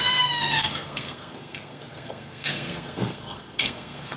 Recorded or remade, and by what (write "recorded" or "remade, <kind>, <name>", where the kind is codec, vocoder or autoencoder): remade, codec, SNAC